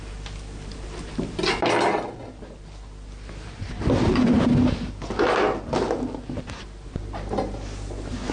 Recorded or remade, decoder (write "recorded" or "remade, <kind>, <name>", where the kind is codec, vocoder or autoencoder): recorded